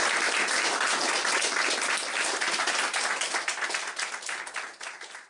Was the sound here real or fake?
real